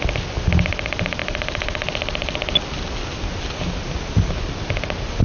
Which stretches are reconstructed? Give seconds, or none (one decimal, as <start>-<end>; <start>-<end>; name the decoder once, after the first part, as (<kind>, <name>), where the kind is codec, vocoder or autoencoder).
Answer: none